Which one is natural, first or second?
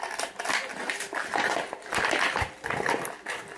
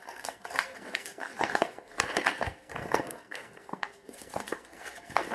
first